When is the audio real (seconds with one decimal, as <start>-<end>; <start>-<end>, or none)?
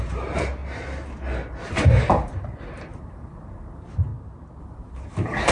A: 0.6-1.7; 4.1-4.6